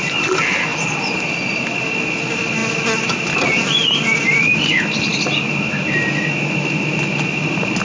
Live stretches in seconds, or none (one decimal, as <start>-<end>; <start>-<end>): 0.0-7.8